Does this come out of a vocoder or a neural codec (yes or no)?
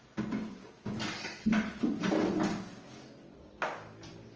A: no